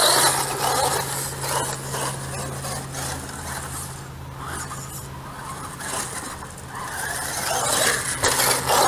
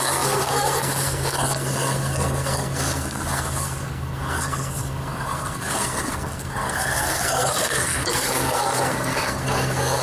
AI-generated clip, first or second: second